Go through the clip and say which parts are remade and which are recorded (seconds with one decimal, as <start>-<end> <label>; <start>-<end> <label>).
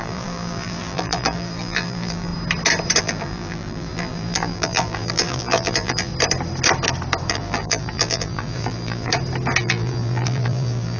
0.0-2.3 remade; 2.3-3.0 recorded; 3.0-6.1 remade; 6.1-7.3 recorded; 7.3-9.1 remade; 9.1-9.6 recorded; 9.6-11.0 remade